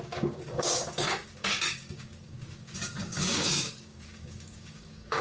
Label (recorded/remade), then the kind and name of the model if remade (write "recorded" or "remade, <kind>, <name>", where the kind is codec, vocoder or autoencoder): remade, codec, DAC